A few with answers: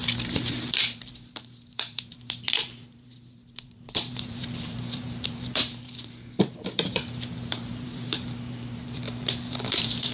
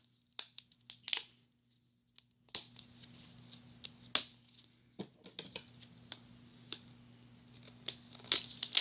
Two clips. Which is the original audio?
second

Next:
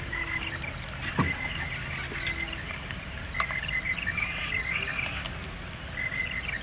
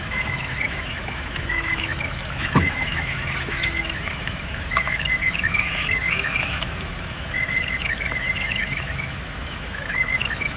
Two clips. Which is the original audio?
first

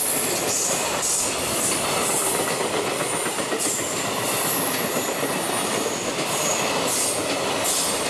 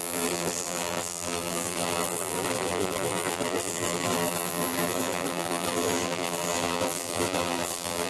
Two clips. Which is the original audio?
first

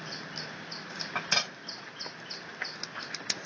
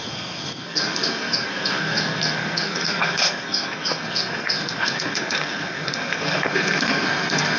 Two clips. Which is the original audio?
first